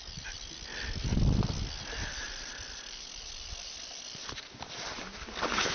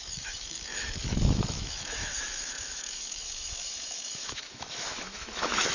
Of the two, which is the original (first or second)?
first